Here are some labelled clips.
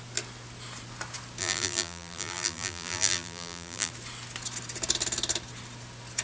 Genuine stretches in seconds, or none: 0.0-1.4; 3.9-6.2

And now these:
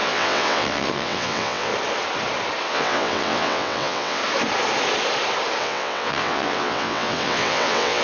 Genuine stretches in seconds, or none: 1.7-2.7; 4.2-5.6

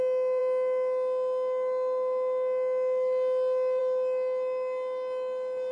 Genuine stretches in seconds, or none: 0.0-5.7

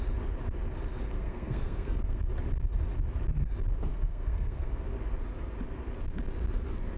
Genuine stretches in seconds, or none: 0.0-1.2; 2.2-3.9; 4.7-7.0

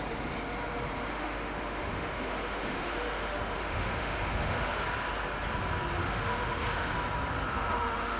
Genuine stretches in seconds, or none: 0.0-1.1; 4.7-6.0; 6.9-7.5

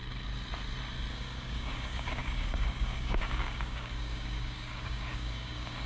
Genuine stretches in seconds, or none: 0.0-1.1

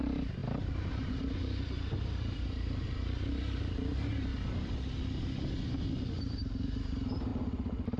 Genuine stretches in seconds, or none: 4.3-6.2; 7.3-8.0